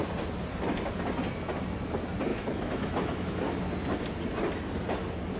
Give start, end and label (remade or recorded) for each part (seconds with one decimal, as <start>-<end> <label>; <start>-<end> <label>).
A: 0.0-2.3 recorded; 2.3-3.4 remade; 3.4-5.4 recorded